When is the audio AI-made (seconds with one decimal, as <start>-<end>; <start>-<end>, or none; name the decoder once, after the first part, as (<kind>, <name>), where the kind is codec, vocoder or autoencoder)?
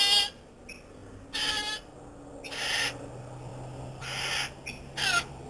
none